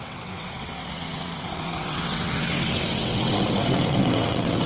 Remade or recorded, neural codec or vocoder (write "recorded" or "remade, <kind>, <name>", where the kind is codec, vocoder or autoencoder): remade, vocoder, WaveNeXt